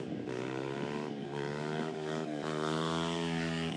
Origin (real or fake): fake